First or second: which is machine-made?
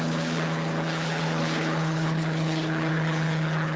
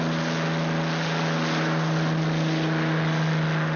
first